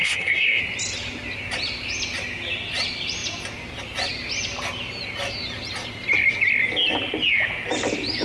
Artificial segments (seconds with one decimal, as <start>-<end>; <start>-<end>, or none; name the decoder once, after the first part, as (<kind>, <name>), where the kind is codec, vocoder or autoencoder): 0.0-0.6 (codec, SNAC)